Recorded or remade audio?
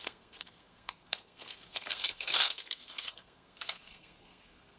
remade